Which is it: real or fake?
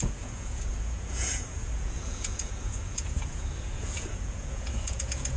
fake